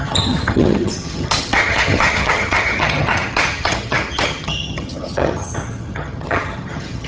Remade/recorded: remade